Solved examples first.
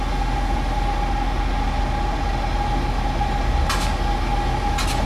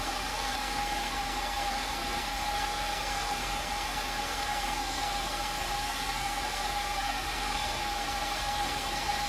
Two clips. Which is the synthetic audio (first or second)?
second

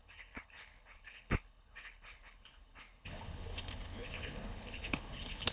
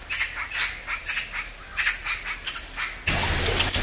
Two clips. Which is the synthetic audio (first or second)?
first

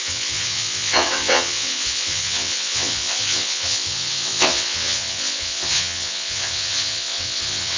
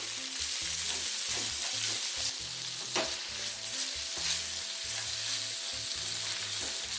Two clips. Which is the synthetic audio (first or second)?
first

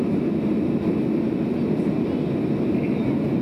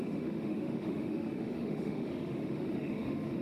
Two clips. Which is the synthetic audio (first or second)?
second